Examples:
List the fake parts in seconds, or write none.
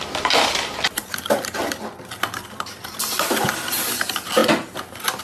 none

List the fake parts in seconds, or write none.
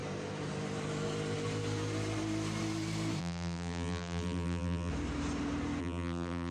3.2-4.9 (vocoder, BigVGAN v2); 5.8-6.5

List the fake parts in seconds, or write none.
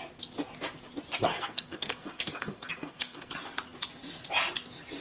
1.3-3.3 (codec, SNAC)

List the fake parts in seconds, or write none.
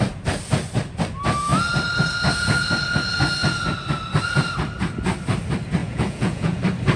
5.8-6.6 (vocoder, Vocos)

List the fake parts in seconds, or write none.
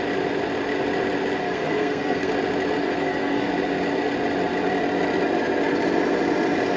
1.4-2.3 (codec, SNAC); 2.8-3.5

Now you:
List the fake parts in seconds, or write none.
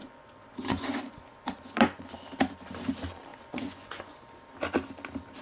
0.0-2.1 (vocoder, Vocos); 3.3-4.2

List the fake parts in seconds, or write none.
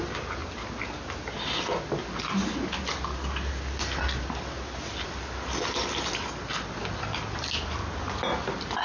none